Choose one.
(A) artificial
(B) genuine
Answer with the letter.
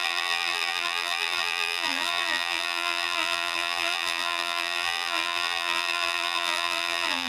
A